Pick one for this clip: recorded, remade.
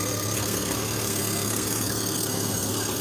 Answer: remade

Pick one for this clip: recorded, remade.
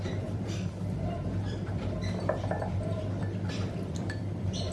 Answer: remade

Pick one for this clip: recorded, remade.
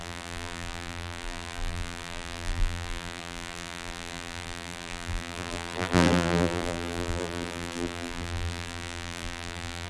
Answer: remade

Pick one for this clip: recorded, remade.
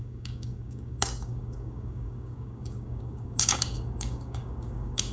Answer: remade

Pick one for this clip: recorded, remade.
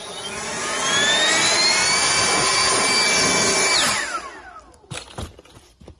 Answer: recorded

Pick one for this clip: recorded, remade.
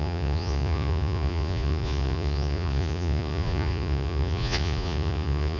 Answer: remade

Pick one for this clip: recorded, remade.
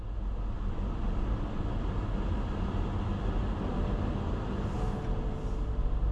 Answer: recorded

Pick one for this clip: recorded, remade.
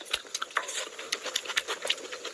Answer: recorded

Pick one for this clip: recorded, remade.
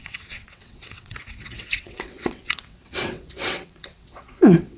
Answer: remade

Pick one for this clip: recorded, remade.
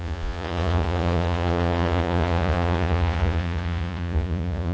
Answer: remade